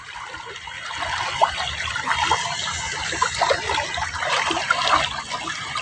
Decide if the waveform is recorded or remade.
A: recorded